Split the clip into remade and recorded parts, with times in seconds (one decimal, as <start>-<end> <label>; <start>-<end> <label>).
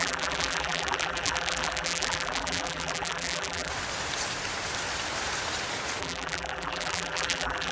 0.0-3.7 remade; 3.7-6.0 recorded; 6.0-7.7 remade